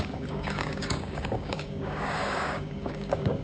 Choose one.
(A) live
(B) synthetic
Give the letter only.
B